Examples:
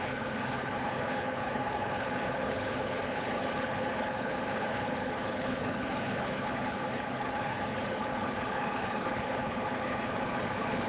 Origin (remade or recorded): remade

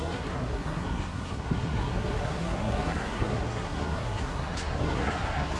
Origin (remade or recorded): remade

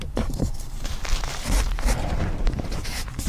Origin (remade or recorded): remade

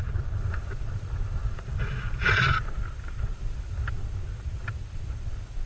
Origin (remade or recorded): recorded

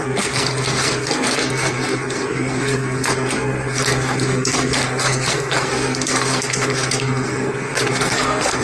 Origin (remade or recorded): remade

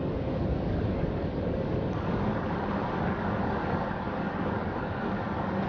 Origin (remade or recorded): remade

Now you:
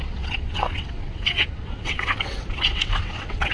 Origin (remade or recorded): remade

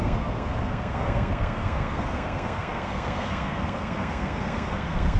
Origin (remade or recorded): remade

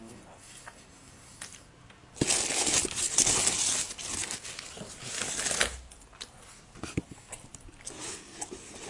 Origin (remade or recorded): recorded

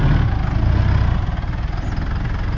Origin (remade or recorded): recorded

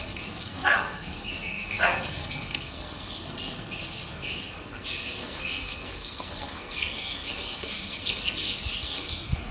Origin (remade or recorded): remade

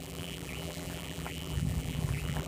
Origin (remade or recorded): remade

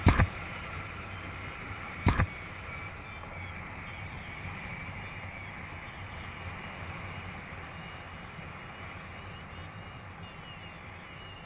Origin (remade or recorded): recorded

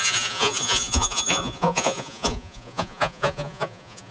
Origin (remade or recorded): remade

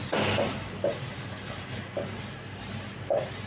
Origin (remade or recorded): recorded